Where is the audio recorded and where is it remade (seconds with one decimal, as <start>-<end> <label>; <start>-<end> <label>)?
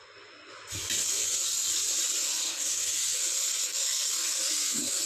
0.0-1.0 recorded; 1.0-1.7 remade; 1.7-2.2 recorded; 2.2-5.1 remade